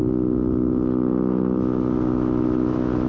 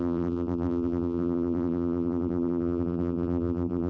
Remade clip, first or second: second